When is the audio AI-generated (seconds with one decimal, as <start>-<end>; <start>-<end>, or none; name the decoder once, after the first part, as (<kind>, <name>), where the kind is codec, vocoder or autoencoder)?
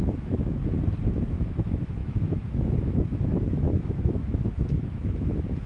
0.0-0.6 (autoencoder, DAC-VAE); 1.1-5.7